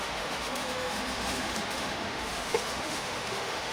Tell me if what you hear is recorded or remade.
remade